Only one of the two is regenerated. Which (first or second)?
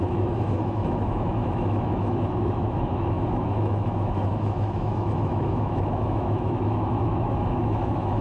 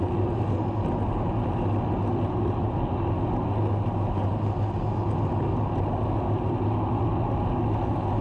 first